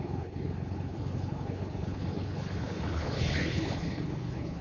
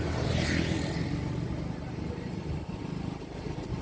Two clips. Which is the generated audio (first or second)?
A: first